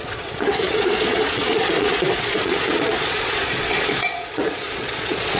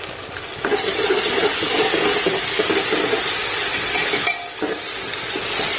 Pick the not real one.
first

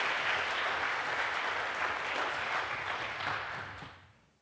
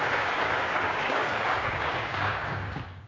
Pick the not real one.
second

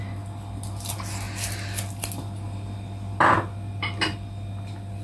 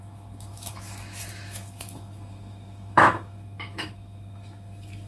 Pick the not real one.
second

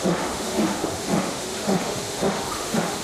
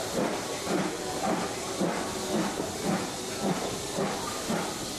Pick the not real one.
first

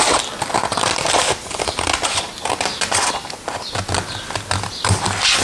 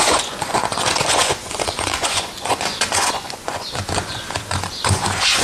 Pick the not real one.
second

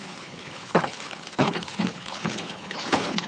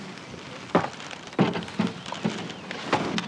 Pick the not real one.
first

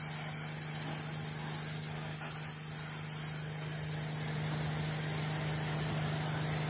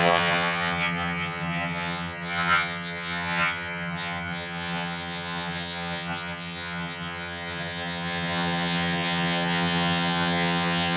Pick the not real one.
second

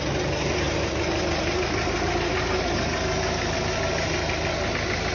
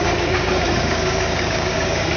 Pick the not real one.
second